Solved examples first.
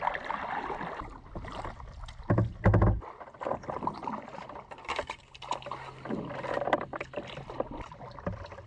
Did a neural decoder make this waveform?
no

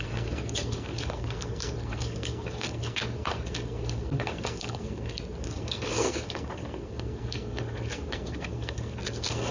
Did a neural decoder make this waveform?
yes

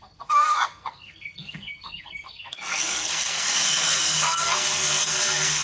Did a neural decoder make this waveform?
yes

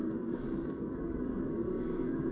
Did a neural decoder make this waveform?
yes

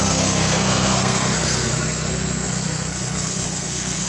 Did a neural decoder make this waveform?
yes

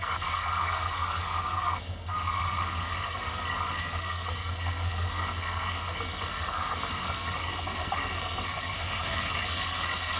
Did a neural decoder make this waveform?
yes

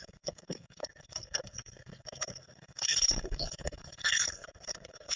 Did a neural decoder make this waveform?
yes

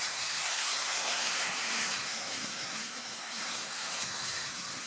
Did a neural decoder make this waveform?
yes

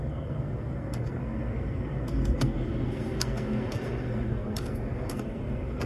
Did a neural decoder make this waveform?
yes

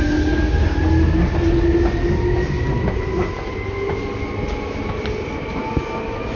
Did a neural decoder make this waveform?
no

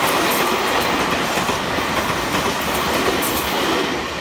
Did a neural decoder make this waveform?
no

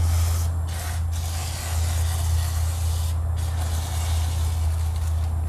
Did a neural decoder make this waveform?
no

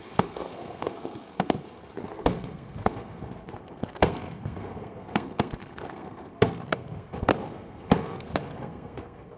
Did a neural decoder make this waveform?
yes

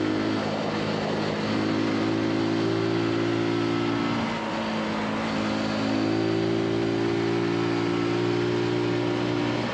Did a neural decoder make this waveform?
no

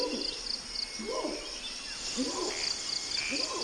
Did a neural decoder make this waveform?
no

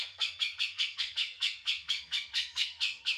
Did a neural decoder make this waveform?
yes